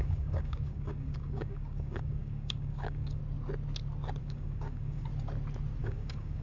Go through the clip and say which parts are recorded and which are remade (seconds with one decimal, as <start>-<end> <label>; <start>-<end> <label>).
0.0-3.2 remade; 3.2-4.2 recorded; 4.2-5.1 remade; 5.1-5.8 recorded; 5.8-6.4 remade